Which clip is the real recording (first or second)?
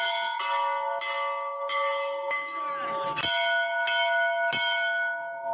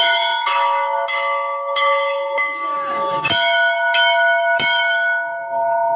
first